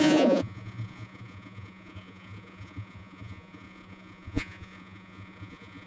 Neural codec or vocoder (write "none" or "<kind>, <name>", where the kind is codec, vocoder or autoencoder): vocoder, Vocos